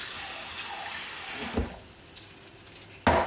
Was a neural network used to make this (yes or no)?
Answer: no